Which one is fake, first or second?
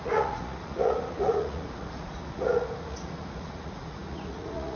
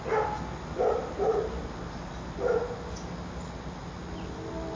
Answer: first